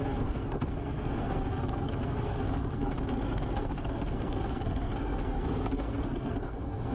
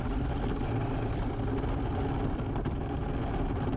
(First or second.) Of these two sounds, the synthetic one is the first